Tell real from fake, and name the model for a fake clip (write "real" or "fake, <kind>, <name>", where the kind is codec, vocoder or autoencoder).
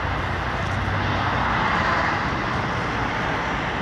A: real